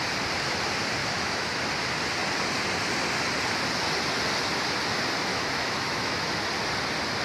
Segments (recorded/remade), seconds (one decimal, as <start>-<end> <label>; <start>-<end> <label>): 0.0-1.0 recorded; 1.0-1.7 remade; 1.7-5.3 recorded; 5.3-6.3 remade; 6.3-7.2 recorded